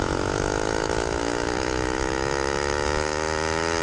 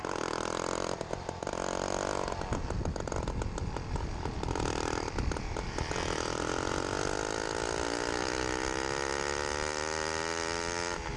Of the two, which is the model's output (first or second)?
first